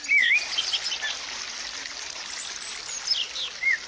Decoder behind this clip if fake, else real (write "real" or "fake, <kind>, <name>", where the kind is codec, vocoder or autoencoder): real